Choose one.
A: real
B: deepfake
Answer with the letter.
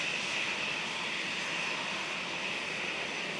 A